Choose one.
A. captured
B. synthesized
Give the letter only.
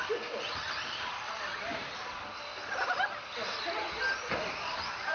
A